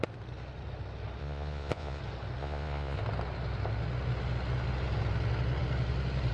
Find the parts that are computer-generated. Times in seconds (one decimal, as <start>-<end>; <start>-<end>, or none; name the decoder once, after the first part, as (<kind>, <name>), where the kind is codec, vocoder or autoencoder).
1.2-2.0 (vocoder, Vocos); 2.4-3.0